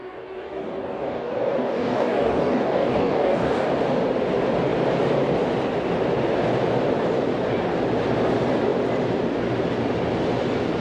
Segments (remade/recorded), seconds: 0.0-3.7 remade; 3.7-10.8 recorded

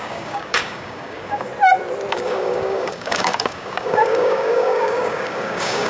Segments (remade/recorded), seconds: 0.0-1.5 remade; 1.5-2.1 recorded; 2.1-5.9 remade